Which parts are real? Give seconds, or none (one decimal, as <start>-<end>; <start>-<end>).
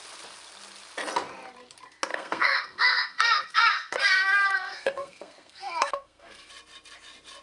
0.0-2.1; 6.5-7.4